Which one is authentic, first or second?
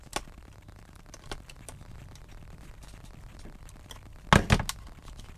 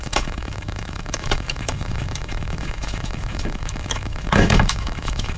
first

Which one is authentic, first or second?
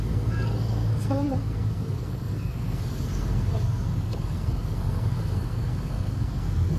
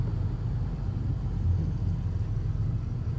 second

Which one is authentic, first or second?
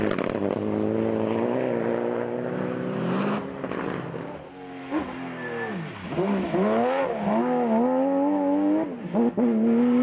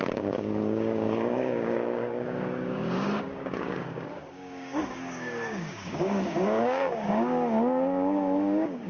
first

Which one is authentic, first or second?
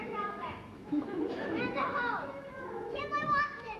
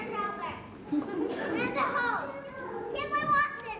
second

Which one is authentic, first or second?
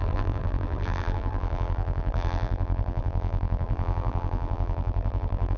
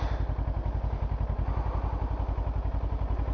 second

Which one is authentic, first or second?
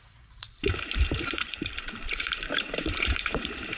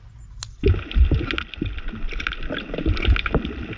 second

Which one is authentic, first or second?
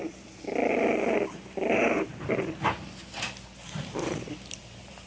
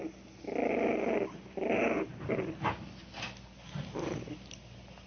second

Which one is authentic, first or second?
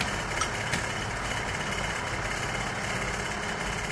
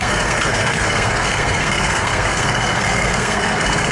first